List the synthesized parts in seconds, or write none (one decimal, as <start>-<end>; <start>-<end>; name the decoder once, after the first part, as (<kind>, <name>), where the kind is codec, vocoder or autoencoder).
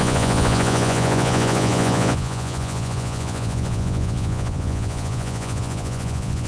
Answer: 0.0-6.5 (vocoder, Vocos)